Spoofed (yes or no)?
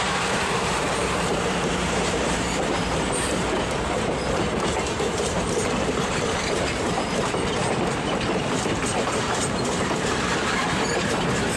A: yes